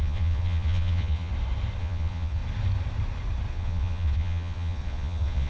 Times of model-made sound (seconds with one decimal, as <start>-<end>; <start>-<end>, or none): 0.0-1.3; 1.8-2.4; 3.5-5.5